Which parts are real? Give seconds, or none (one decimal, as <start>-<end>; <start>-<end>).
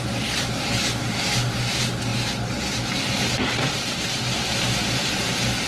none